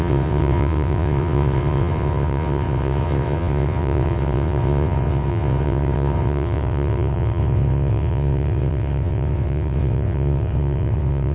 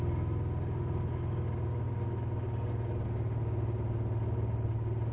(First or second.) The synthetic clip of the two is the first